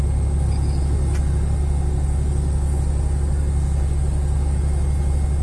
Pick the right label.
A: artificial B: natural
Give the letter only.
B